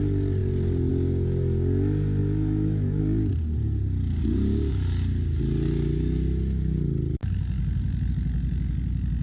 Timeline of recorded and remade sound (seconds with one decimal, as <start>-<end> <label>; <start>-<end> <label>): 0.0-2.2 recorded; 2.2-3.0 remade; 3.0-9.2 recorded